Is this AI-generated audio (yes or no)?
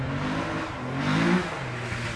no